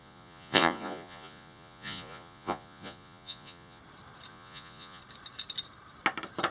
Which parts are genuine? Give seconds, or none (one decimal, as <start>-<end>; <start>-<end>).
3.8-4.3; 5.0-6.5